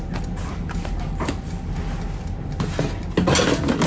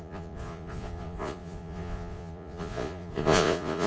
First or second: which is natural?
first